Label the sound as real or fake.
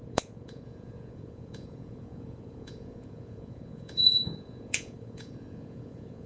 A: fake